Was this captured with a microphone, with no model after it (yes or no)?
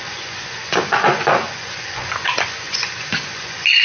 no